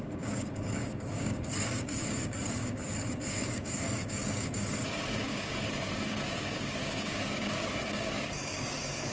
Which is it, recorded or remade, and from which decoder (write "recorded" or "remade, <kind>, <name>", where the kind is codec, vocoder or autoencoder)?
remade, codec, DAC